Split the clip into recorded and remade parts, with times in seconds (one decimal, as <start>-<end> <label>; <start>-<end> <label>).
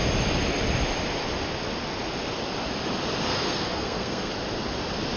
0.0-3.2 recorded; 3.2-4.3 remade; 4.3-5.2 recorded